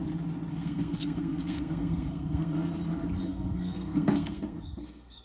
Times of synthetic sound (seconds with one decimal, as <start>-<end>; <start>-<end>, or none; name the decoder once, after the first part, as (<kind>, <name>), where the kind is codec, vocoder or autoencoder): 0.5-2.6 (codec, SNAC); 3.2-5.2

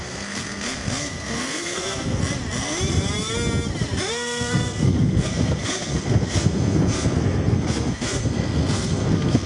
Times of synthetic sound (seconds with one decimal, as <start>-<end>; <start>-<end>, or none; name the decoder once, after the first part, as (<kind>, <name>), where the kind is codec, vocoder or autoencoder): 0.0-2.2 (codec, SNAC); 4.1-9.5

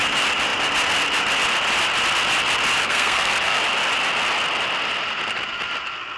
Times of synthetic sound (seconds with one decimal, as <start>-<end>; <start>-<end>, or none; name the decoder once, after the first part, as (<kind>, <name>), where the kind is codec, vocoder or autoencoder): 2.8-3.6 (codec, SNAC)

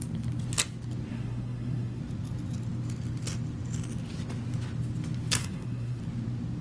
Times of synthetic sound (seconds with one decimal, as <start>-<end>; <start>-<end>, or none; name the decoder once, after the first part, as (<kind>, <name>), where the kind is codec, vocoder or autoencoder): 1.1-2.0 (codec, SNAC); 5.4-6.0

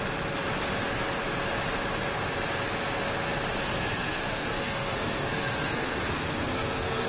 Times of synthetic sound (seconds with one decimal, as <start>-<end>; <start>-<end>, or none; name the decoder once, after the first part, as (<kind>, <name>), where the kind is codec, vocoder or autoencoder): 3.6-7.1 (codec, SNAC)

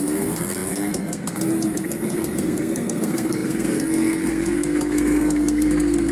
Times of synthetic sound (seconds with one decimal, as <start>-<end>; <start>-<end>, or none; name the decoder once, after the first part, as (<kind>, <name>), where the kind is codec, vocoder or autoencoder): 0.0-6.1 (codec, SNAC)